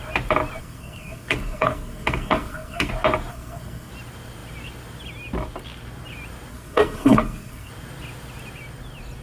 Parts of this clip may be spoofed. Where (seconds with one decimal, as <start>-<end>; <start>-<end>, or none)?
0.6-2.9; 3.3-3.9; 6.5-7.7